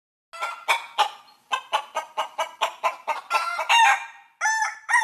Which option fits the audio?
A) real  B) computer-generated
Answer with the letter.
A